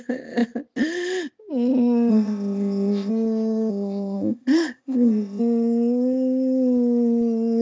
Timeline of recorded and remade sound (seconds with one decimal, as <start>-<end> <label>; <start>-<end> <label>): 0.0-2.1 recorded; 2.1-3.1 remade; 3.1-3.7 recorded; 3.7-5.4 remade; 5.4-7.6 recorded